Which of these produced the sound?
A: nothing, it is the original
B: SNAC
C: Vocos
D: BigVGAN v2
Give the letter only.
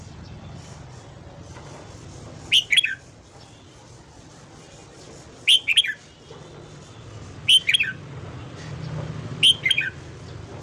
A